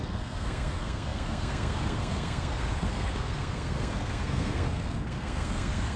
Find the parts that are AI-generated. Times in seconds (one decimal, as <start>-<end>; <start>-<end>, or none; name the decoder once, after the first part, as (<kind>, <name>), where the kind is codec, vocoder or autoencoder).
0.0-6.0 (codec, SNAC)